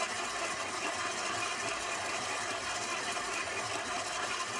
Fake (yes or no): no